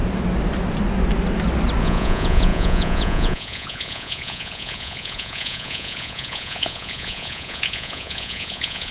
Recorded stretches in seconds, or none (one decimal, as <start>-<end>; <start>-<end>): 0.0-1.8